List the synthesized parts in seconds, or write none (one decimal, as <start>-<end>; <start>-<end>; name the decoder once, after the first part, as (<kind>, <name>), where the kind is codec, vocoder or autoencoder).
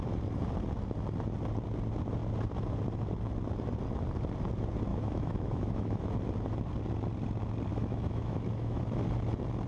4.9-6.1 (autoencoder, DAC-VAE); 7.7-8.8